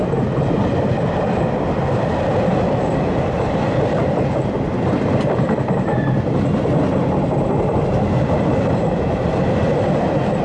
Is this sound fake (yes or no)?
no